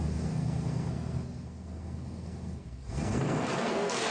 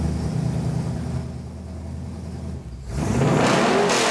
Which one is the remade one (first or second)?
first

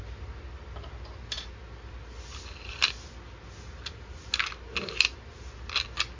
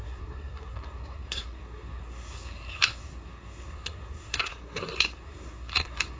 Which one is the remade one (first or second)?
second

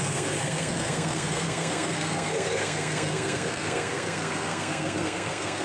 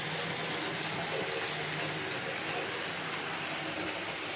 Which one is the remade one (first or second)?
first